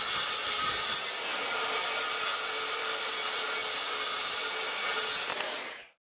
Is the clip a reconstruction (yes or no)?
no